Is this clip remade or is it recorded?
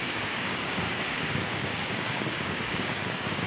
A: remade